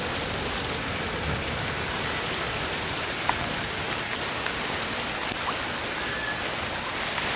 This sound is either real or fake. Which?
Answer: real